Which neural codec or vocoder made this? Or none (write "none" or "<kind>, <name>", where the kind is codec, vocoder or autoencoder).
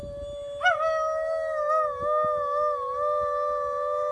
none